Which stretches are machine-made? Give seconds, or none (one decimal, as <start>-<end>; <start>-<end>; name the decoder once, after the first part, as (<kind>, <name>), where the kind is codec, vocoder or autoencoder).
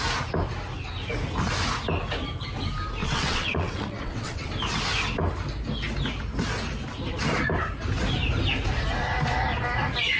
3.0-4.5 (vocoder, WaveNeXt)